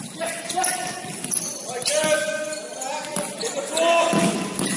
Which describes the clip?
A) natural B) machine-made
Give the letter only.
A